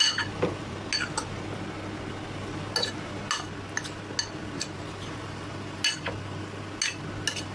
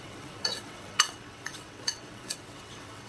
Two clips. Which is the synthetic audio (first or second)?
second